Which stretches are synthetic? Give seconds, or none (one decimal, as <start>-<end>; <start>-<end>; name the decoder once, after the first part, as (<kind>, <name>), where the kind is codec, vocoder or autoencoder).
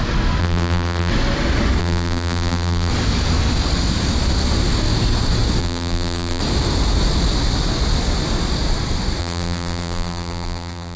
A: 0.4-1.1 (vocoder, BigVGAN v2); 1.8-2.9; 5.6-6.4; 9.2-11.0